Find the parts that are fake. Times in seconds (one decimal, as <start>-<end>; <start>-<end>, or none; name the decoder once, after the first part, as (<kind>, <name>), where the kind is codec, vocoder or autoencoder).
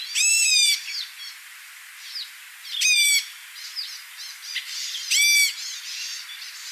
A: 2.6-5.2 (vocoder, BigVGAN v2)